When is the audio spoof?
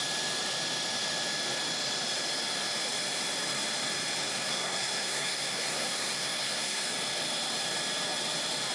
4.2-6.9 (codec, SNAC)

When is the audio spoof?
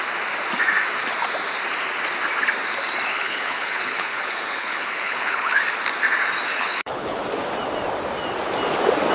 3.1-5.6 (codec, HILCodec); 6.5-7.2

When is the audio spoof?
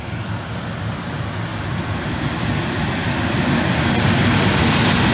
1.5-4.6 (vocoder, BigVGAN v2)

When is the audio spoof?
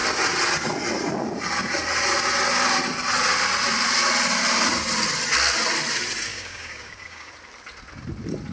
6.3-7.3 (codec, DAC)